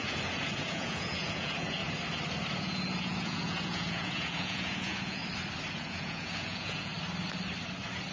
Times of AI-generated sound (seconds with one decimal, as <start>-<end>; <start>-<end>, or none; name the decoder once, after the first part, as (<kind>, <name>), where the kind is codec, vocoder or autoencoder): 0.0-1.8 (vocoder, Vocos); 2.6-5.2; 5.7-6.9